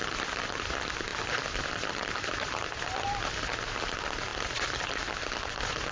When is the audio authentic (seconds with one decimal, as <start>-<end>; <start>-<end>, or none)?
0.0-1.1; 1.9-4.3; 5.2-5.9